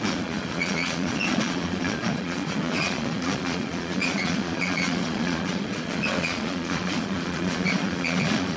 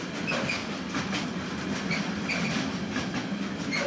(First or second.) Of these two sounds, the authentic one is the second